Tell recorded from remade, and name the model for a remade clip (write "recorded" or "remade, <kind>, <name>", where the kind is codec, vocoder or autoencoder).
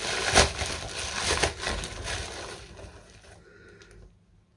recorded